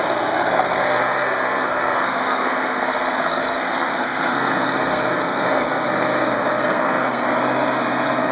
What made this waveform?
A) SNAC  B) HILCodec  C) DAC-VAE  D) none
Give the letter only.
A